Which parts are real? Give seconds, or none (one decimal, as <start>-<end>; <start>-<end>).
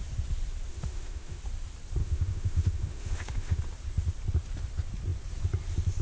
0.0-0.7; 1.4-2.0; 3.6-6.0